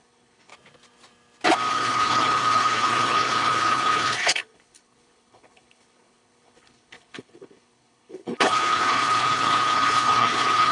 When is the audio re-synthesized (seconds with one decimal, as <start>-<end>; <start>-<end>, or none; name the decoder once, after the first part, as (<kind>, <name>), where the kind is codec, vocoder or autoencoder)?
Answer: 0.0-0.5 (codec, HILCodec); 1.7-10.7